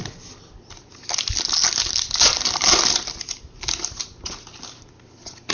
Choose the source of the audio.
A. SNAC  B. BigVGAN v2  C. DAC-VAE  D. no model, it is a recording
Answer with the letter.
D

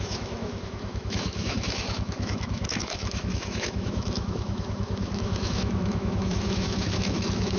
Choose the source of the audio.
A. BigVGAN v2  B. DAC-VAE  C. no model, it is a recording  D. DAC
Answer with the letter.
B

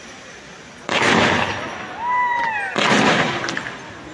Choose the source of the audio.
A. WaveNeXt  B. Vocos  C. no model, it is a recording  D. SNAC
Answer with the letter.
C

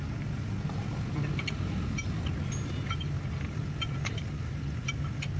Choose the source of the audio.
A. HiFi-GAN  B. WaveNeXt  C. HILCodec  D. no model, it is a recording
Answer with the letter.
D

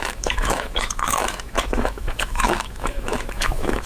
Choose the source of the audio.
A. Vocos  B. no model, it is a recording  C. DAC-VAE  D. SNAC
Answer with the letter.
C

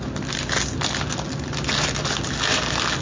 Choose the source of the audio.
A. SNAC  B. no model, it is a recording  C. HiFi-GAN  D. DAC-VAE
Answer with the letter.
B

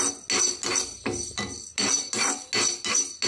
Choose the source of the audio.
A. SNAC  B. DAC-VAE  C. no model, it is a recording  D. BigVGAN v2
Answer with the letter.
C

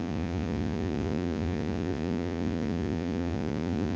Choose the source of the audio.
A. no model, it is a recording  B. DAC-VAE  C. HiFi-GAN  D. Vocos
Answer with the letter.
D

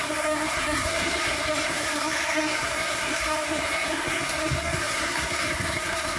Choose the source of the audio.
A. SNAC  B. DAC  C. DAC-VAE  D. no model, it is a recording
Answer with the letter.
A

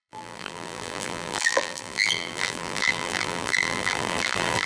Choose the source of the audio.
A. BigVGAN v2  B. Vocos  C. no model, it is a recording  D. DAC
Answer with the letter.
A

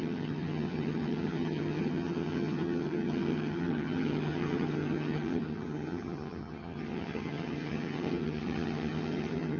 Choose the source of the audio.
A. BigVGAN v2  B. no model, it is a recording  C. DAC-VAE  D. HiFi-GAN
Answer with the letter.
D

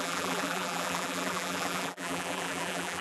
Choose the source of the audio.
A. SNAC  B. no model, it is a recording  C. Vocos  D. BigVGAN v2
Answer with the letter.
D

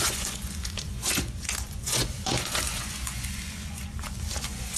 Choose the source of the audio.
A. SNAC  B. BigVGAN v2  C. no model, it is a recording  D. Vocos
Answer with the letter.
D